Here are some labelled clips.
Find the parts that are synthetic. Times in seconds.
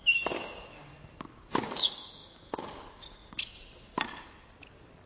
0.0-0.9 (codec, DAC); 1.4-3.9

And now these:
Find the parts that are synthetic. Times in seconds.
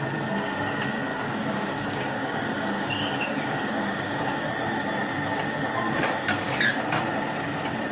1.1-4.5 (codec, DAC)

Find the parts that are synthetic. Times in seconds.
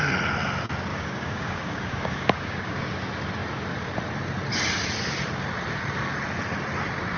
0.9-2.9 (codec, DAC)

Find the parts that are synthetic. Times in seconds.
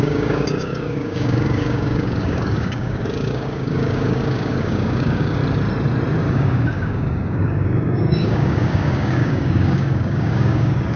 0.0-5.4 (codec, DAC); 6.3-11.0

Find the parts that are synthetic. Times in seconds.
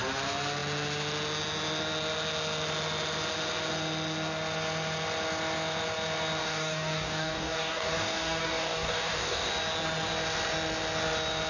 6.4-9.5 (codec, DAC)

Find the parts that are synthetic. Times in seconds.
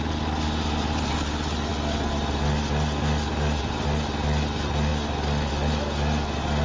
none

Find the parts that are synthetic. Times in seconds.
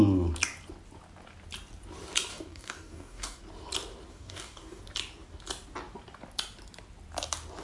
2.3-3.4 (codec, DAC); 4.1-4.8